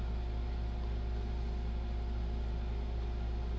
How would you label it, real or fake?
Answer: real